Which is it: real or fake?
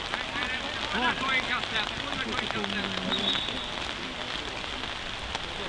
real